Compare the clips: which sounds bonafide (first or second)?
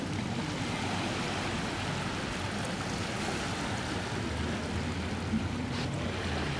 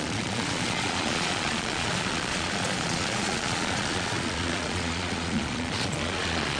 first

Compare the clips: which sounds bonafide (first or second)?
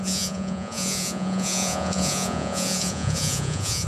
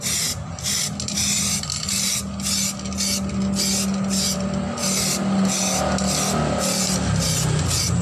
second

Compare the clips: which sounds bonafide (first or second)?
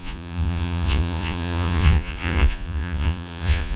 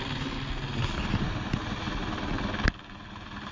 second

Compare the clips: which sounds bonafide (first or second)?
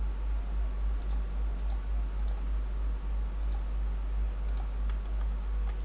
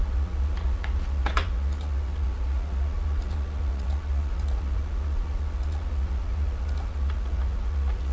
first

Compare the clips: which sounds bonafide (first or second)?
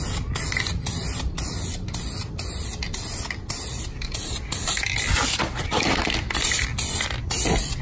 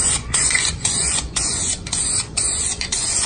first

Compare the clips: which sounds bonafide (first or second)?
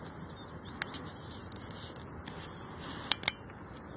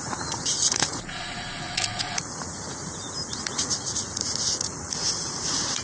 first